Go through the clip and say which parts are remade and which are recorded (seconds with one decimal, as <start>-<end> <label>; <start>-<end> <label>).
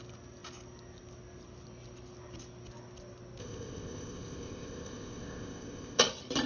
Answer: 0.0-3.4 recorded; 3.4-6.0 remade; 6.0-6.5 recorded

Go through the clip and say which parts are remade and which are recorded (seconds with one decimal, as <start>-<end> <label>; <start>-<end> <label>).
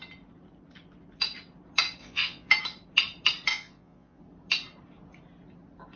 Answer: 0.0-2.0 recorded; 2.0-2.5 remade; 2.5-3.5 recorded; 3.5-4.2 remade; 4.2-6.0 recorded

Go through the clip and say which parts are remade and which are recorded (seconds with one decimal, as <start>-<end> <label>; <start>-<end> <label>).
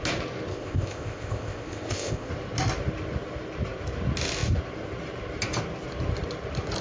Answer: 0.0-0.5 recorded; 0.5-2.3 remade; 2.3-6.8 recorded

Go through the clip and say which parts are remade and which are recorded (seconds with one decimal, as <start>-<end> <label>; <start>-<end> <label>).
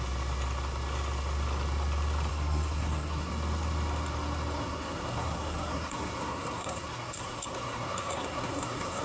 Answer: 0.0-2.3 recorded; 2.3-3.3 remade; 3.3-4.6 recorded; 4.6-9.0 remade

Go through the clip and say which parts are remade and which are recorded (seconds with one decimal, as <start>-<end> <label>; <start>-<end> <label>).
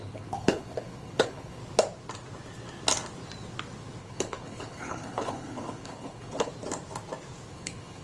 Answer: 0.0-1.6 remade; 1.6-4.0 recorded; 4.0-6.5 remade; 6.5-7.5 recorded; 7.5-8.0 remade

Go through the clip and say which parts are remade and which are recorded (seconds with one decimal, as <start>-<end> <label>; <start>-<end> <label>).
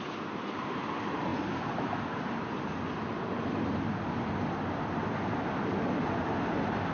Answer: 0.0-6.9 recorded